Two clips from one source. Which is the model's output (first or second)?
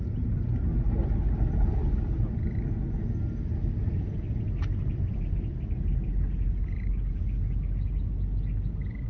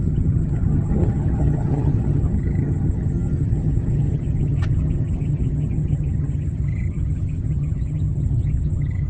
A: second